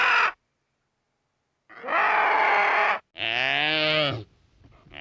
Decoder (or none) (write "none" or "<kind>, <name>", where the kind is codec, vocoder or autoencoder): none